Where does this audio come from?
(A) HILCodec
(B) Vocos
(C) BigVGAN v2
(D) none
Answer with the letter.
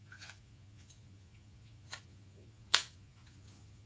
B